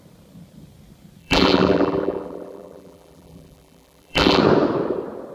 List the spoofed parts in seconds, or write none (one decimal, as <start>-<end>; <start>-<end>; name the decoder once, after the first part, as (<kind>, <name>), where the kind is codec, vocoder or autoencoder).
1.2-4.4 (vocoder, BigVGAN v2)